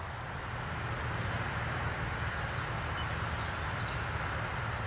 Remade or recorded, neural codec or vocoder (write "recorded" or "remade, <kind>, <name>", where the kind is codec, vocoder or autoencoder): recorded